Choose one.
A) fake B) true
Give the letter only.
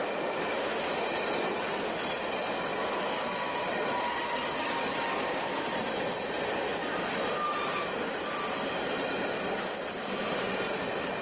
B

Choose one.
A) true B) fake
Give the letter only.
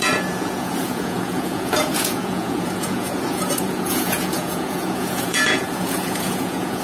B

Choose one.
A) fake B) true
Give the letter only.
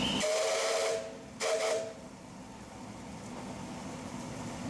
B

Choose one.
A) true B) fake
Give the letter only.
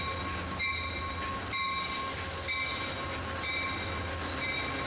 A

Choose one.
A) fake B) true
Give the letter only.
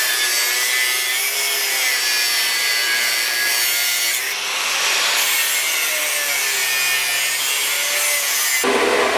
B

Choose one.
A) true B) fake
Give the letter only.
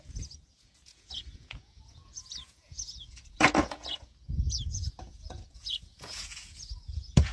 B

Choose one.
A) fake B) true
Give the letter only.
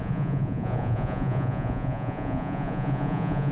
A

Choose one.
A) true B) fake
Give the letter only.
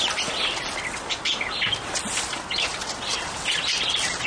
A